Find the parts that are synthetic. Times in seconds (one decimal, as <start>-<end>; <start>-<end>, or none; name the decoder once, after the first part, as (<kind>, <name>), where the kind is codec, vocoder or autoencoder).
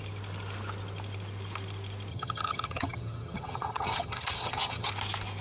2.1-4.9 (vocoder, HiFi-GAN)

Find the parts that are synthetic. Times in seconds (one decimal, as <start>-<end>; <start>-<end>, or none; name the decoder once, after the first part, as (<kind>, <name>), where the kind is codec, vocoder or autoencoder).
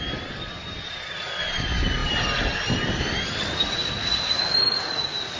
none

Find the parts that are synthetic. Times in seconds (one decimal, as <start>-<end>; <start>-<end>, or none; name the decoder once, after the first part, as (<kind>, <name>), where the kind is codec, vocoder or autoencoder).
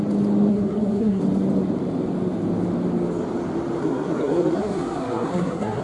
0.5-1.2 (codec, SNAC); 3.8-5.8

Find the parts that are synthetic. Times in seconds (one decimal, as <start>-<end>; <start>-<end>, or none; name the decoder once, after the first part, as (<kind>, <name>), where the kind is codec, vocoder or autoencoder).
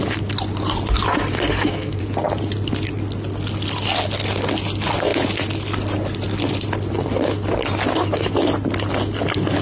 1.5-2.0 (codec, SNAC)